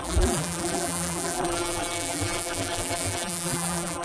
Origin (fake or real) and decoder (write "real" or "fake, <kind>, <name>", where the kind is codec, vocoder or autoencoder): fake, vocoder, BigVGAN v2